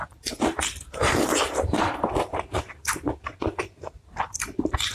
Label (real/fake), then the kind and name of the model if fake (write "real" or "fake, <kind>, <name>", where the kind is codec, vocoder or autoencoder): fake, vocoder, BigVGAN v2